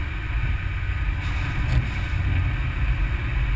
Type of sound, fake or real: real